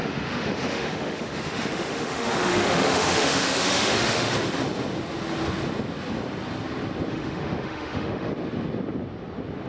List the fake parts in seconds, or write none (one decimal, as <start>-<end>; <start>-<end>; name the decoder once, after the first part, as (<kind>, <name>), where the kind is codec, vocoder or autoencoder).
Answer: 0.0-4.3 (autoencoder, DAC-VAE); 7.1-8.3